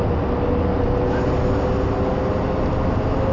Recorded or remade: recorded